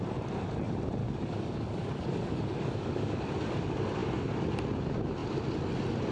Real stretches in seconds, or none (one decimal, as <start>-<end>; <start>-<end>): 0.0-1.0; 3.2-6.1